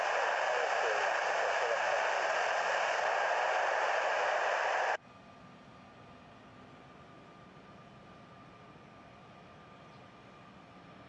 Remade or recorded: recorded